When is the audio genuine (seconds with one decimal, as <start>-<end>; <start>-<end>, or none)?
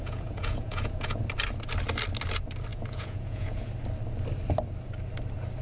1.2-2.7; 3.7-5.6